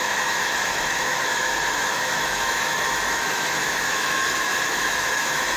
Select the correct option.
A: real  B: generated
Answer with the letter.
B